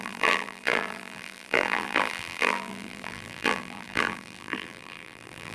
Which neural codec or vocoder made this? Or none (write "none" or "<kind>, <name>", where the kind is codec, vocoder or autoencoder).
vocoder, BigVGAN v2